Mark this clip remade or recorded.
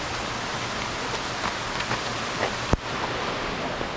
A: recorded